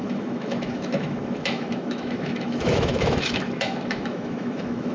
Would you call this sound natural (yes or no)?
no